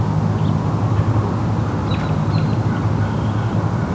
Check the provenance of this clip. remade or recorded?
recorded